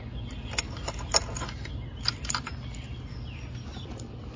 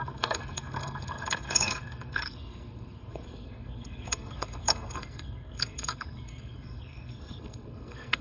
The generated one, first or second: second